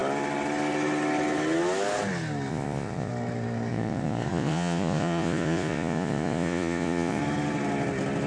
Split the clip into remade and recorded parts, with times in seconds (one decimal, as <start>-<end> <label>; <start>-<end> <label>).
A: 0.0-2.5 recorded; 2.5-3.1 remade; 3.1-3.7 recorded; 3.7-7.2 remade; 7.2-8.3 recorded